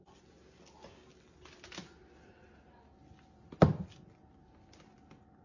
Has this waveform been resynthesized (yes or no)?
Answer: no